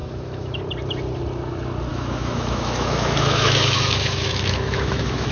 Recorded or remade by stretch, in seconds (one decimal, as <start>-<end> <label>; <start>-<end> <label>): 0.0-0.6 remade; 0.6-1.9 recorded; 1.9-5.3 remade